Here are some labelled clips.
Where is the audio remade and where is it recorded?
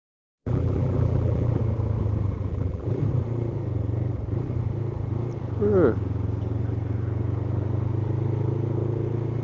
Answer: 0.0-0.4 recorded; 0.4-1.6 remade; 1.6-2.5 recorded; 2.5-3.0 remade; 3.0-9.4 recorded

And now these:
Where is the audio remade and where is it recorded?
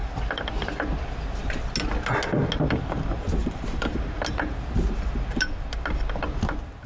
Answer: 0.0-0.5 remade; 0.5-3.4 recorded; 3.4-4.3 remade; 4.3-6.9 recorded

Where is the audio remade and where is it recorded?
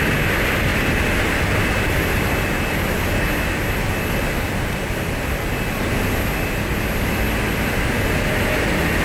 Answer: 0.0-9.0 recorded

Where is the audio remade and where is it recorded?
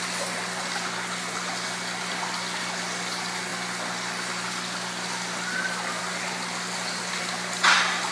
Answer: 0.0-8.1 recorded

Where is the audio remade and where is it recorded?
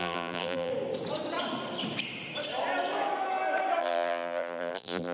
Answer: 0.0-0.7 remade; 0.7-3.8 recorded; 3.8-5.1 remade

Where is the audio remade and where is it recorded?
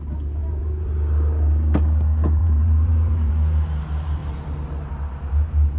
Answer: 0.0-0.4 recorded; 0.4-0.9 remade; 0.9-2.4 recorded; 2.4-3.3 remade; 3.3-4.2 recorded; 4.2-4.9 remade; 4.9-5.8 recorded